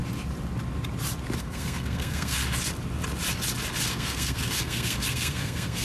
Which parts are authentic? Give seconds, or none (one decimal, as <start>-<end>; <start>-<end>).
0.0-1.4; 2.4-3.9

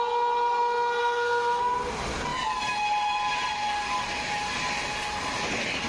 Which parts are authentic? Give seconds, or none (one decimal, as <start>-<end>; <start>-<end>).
0.0-1.0; 1.6-5.9

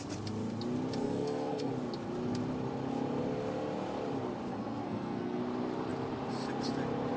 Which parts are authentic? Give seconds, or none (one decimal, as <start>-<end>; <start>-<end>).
0.0-1.0; 1.7-4.5; 5.4-7.2